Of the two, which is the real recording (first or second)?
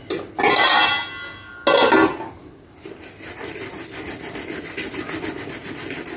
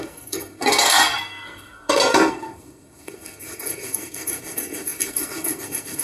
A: first